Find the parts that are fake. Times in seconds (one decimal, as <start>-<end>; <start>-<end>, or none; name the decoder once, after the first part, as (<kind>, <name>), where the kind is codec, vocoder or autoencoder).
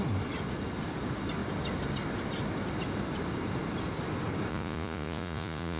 4.5-5.8 (vocoder, Vocos)